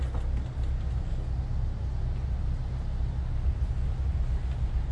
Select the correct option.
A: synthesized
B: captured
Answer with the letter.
B